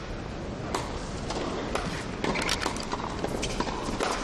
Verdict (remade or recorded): recorded